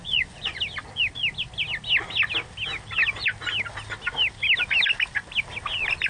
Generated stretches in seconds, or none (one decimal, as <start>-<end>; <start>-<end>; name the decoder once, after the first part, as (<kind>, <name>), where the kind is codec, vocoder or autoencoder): 0.0-0.6 (vocoder, Vocos)